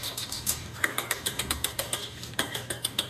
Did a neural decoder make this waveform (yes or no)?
yes